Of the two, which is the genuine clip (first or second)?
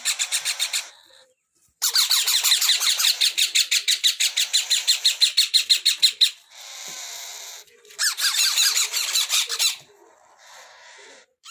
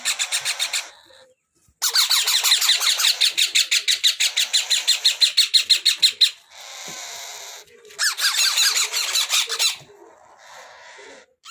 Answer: second